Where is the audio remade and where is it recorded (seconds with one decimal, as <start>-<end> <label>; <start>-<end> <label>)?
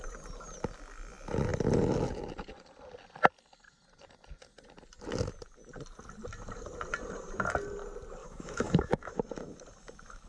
0.0-8.2 recorded; 8.2-9.1 remade; 9.1-10.3 recorded